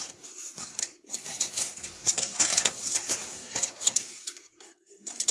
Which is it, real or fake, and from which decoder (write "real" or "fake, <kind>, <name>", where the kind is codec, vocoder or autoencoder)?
fake, codec, SNAC